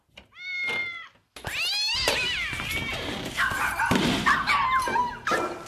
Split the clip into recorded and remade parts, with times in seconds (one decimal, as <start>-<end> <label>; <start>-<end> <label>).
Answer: 0.0-5.7 recorded